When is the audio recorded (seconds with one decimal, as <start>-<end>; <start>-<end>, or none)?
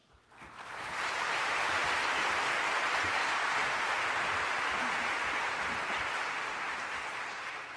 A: 1.8-2.8; 3.6-6.8